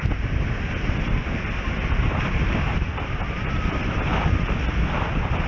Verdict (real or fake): real